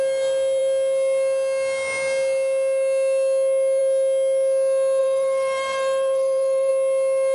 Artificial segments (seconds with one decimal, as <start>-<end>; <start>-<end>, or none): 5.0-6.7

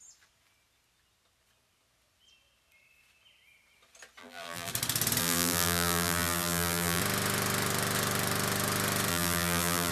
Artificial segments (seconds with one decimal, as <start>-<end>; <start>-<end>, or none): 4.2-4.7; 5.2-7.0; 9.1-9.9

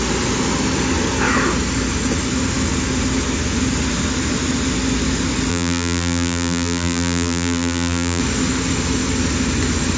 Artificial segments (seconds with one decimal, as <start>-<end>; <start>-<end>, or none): 5.5-8.2

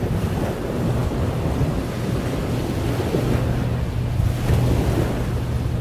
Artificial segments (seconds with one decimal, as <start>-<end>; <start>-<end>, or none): none

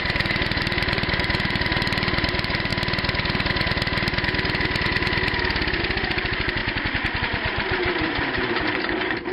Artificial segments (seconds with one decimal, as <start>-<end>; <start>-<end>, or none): 0.0-2.7; 5.8-6.6; 7.2-9.3

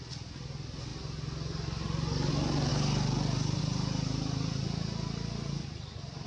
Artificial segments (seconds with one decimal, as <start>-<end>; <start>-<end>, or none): none

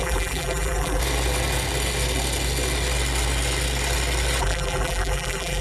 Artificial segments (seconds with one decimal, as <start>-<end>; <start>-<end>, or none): 0.0-1.0; 4.4-5.6